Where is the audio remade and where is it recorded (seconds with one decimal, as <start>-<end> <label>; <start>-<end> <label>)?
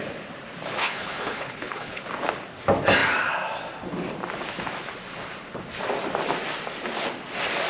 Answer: 0.0-0.8 recorded; 0.8-2.0 remade; 2.0-7.7 recorded